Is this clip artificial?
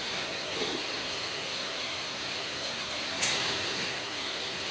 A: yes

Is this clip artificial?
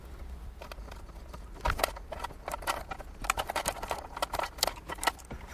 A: no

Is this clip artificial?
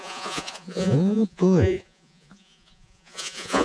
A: yes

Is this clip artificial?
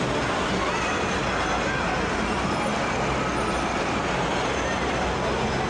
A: no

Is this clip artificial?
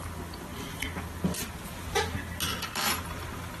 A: no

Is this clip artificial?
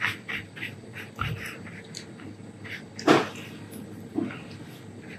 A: no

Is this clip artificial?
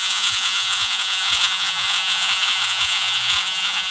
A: yes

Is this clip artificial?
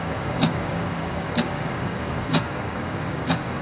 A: yes